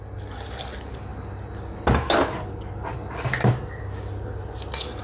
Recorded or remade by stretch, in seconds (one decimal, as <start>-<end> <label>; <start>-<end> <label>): 0.0-5.0 recorded